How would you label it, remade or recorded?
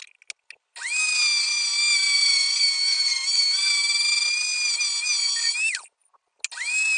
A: recorded